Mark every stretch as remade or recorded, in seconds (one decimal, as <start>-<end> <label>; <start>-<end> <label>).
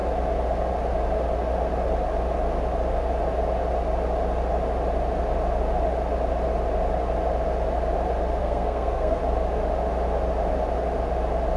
0.0-8.4 recorded; 8.4-9.2 remade; 9.2-11.6 recorded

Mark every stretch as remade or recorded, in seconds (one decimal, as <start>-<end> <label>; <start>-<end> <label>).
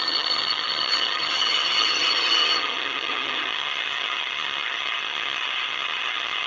0.0-6.5 remade